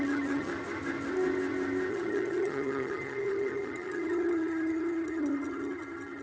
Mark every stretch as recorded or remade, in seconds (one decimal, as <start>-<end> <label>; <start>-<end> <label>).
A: 0.0-0.5 remade; 0.5-1.9 recorded; 1.9-6.2 remade